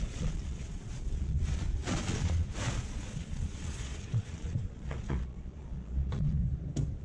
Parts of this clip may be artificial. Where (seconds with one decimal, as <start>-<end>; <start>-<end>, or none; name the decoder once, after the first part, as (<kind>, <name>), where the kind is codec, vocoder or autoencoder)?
0.0-6.4 (vocoder, Vocos)